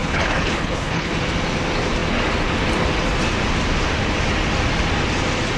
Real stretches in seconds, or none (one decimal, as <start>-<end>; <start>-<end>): 1.1-5.6